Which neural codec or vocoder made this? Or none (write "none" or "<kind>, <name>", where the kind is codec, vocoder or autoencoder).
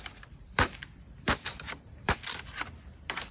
vocoder, BigVGAN v2